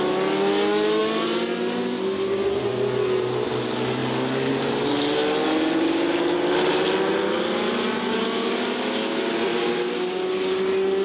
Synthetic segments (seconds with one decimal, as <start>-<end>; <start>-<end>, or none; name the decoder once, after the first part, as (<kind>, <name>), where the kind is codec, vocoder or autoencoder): none